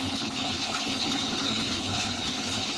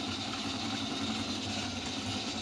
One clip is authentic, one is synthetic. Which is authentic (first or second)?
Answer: second